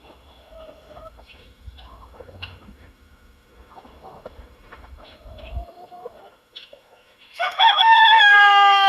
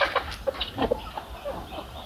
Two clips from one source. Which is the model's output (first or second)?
first